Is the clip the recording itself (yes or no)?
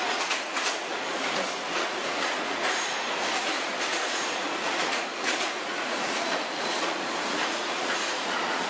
no